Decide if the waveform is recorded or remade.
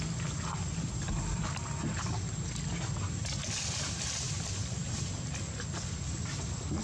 recorded